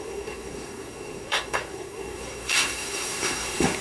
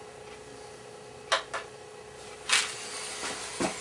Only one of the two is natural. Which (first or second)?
second